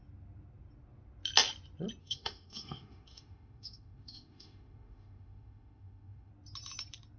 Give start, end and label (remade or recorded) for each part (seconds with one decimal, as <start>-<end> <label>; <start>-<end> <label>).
0.0-2.0 recorded; 2.0-6.3 remade; 6.3-7.2 recorded